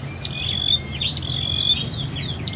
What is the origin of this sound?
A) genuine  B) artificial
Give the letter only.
A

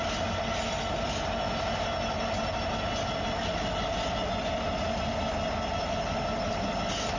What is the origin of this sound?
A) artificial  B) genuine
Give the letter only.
B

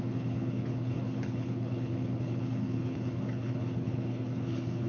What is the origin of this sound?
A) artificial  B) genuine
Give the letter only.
A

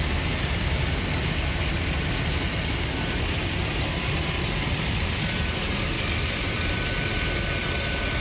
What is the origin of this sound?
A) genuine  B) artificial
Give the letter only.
A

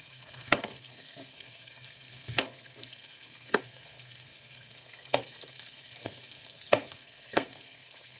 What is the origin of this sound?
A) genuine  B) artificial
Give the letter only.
B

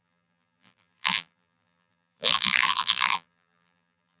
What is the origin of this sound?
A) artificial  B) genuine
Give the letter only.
A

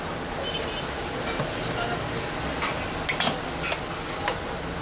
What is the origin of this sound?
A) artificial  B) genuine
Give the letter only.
B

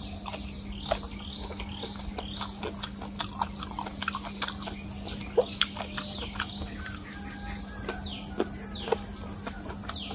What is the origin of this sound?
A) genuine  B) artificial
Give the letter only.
A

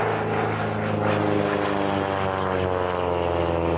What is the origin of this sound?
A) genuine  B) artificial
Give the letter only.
A